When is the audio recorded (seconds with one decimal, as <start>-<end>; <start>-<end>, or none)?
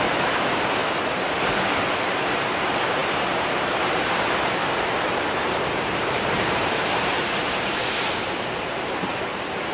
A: 0.8-2.0